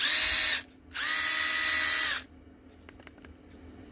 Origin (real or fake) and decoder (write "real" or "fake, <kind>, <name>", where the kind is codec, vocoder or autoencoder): real